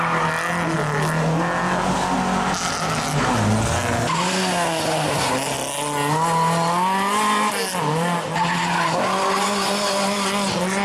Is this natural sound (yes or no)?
yes